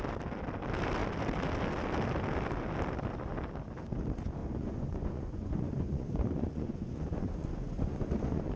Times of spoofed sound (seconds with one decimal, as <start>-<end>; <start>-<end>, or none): 4.4-8.6